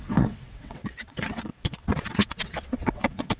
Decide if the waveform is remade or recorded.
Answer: remade